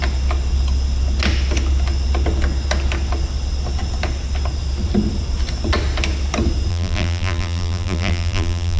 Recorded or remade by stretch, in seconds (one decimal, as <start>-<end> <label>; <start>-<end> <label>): 0.0-6.7 recorded; 6.7-8.8 remade